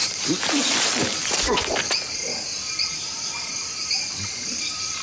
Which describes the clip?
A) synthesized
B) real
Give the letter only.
B